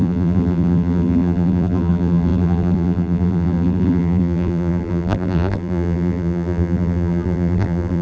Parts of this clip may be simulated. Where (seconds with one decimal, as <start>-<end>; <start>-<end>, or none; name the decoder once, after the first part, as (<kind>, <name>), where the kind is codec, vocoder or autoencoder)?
0.0-8.0 (vocoder, BigVGAN v2)

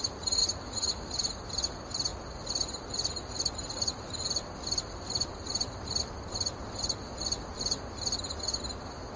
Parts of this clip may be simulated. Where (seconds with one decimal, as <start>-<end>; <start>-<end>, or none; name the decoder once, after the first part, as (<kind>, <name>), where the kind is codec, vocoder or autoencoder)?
0.4-1.1 (vocoder, BigVGAN v2); 2.1-6.0

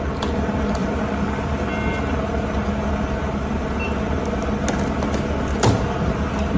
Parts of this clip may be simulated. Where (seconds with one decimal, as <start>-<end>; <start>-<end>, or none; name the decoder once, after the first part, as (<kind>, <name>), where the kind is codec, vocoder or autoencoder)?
0.8-1.6 (vocoder, BigVGAN v2)

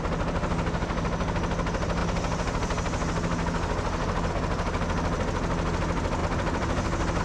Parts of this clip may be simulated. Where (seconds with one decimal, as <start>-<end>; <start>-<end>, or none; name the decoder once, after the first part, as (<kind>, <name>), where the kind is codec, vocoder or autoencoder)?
6.2-7.2 (vocoder, BigVGAN v2)

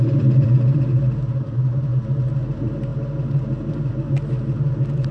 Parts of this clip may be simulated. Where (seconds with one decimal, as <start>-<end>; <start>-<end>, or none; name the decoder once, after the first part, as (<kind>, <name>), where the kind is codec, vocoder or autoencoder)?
0.0-1.9 (vocoder, BigVGAN v2); 2.5-5.1

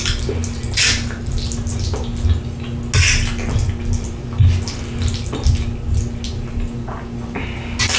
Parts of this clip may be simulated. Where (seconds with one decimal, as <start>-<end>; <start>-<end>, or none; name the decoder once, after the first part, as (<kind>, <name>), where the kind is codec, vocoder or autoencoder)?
none